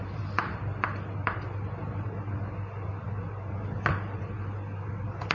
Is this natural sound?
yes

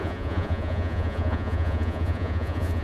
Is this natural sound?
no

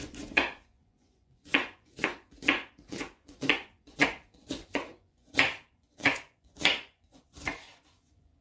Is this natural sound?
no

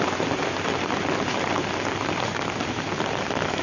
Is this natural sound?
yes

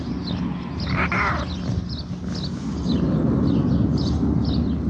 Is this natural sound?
yes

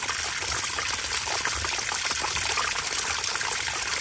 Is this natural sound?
yes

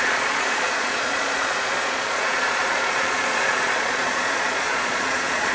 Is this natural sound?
no